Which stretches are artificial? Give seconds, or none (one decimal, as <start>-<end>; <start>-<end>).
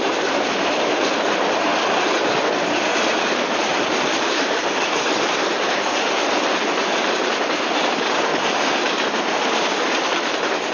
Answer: 0.0-1.7; 3.3-8.3; 9.5-10.7